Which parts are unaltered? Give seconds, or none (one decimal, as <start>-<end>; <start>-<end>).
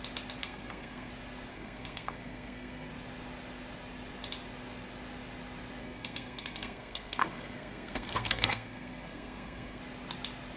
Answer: 0.0-0.4; 1.1-1.5; 2.9-5.8; 9.8-10.6